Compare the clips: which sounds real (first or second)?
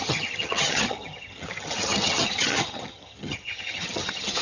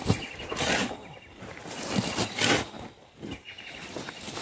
second